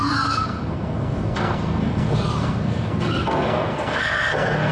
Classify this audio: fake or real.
fake